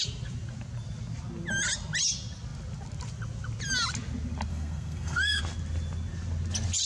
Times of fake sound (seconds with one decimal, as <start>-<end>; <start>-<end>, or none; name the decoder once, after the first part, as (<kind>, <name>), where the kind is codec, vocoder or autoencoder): 4.5-5.4 (codec, SNAC)